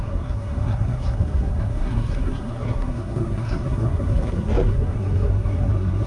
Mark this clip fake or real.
fake